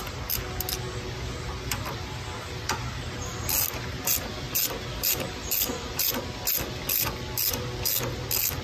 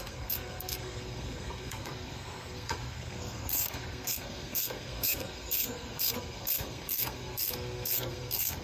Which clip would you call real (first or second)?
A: first